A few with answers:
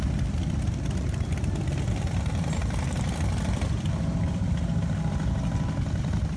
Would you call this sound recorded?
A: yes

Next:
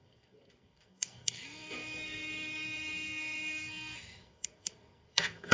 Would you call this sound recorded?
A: no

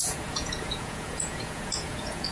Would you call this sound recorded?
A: no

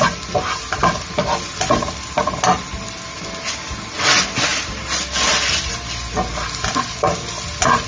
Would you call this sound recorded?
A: yes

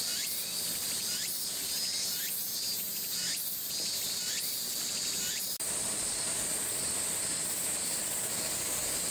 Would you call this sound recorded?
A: yes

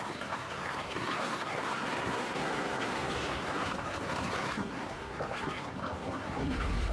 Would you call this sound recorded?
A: no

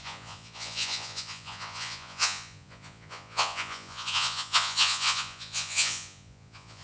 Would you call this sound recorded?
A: no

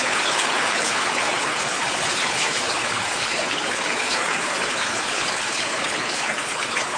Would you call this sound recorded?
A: no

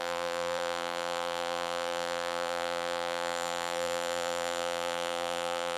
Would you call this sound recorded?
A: no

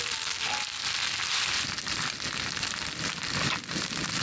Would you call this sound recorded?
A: no